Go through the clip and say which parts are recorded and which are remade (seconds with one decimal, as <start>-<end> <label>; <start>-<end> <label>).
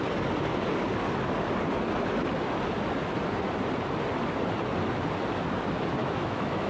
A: 0.0-6.0 recorded; 6.0-6.7 remade